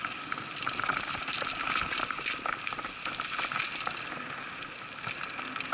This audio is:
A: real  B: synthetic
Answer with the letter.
A